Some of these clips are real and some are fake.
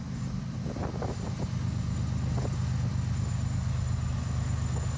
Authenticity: real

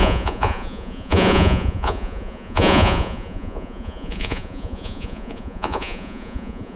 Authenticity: fake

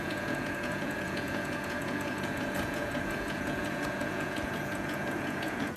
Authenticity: fake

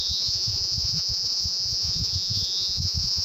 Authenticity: fake